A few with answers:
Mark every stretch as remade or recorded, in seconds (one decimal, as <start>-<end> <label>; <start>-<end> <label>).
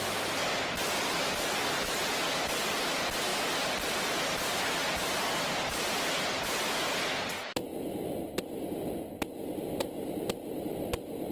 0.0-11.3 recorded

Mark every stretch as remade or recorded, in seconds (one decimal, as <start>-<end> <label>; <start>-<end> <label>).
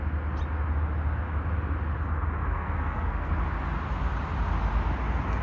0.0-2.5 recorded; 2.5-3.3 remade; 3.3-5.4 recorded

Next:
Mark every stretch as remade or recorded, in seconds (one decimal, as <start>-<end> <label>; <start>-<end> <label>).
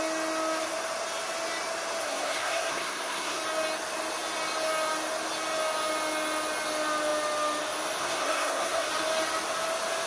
0.0-2.0 recorded; 2.0-3.4 remade; 3.4-8.0 recorded; 8.0-8.9 remade; 8.9-10.1 recorded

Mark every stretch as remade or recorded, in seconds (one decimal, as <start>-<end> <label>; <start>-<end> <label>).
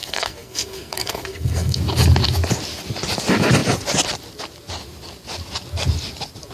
0.0-1.8 remade; 1.8-6.5 recorded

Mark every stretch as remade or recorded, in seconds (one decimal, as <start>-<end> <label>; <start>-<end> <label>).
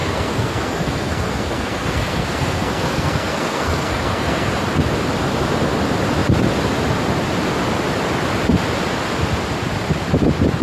0.0-4.5 remade; 4.5-10.6 recorded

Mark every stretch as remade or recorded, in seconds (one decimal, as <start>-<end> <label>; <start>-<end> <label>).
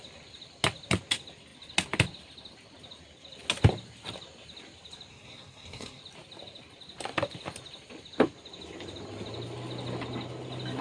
0.0-5.1 recorded; 5.1-6.0 remade; 6.0-10.8 recorded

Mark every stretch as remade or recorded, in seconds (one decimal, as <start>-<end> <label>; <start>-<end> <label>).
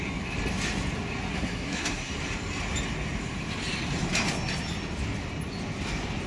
0.0-1.3 recorded; 1.3-2.1 remade; 2.1-6.3 recorded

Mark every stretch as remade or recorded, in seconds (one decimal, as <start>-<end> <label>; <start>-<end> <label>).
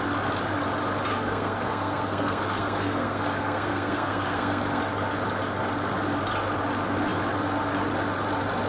0.0-1.1 recorded; 1.1-4.8 remade; 4.8-8.7 recorded